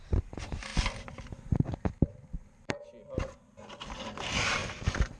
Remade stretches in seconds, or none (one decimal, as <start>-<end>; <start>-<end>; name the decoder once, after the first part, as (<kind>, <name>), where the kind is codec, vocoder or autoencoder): 0.7-2.7 (vocoder, BigVGAN v2); 4.6-5.2